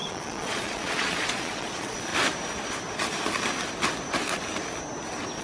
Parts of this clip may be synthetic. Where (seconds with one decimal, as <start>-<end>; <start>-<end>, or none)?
0.0-2.1